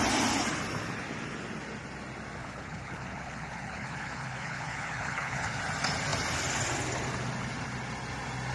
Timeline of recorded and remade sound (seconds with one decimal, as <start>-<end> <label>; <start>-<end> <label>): 0.0-2.4 recorded; 2.4-5.6 remade; 5.6-8.5 recorded